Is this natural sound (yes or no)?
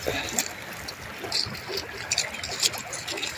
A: yes